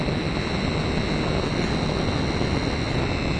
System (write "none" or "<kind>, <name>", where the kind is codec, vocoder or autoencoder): none